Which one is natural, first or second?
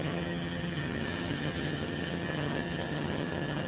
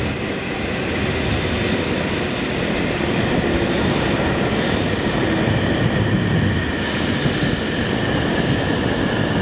second